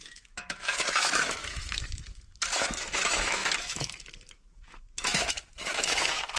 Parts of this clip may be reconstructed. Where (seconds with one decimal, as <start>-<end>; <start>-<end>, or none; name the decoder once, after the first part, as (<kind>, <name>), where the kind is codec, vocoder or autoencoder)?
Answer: 0.0-6.4 (autoencoder, DAC-VAE)